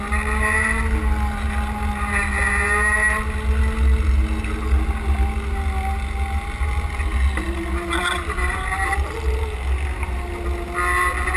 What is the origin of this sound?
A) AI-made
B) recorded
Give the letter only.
B